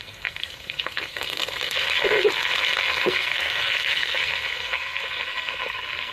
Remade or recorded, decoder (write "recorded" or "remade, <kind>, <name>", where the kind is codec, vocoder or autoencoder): remade, codec, SNAC